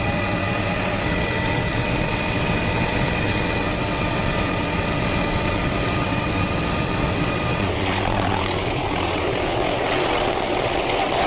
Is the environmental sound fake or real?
fake